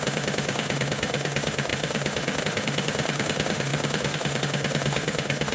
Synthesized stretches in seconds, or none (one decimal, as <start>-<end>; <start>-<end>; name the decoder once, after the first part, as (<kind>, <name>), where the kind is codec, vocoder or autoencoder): 0.0-5.5 (autoencoder, DAC-VAE)